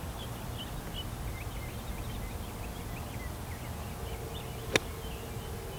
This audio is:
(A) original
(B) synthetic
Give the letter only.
A